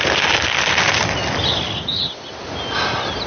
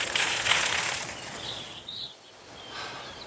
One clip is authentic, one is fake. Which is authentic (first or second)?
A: first